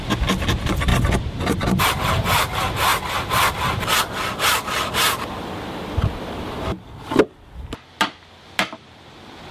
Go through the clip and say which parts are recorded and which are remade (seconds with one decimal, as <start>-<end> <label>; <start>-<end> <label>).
0.0-9.5 recorded